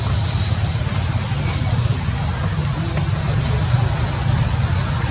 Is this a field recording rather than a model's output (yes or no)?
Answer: yes